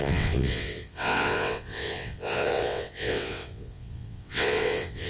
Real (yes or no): no